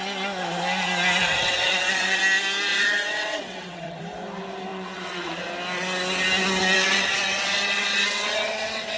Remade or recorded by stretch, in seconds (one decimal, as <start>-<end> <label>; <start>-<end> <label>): 0.0-1.2 recorded; 1.2-2.2 remade; 2.2-2.7 recorded; 2.7-4.0 remade; 4.0-4.7 recorded; 4.7-5.5 remade; 5.5-6.6 recorded; 6.6-9.0 remade